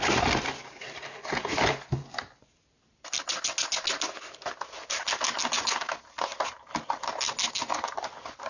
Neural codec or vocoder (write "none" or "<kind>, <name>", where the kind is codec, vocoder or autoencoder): none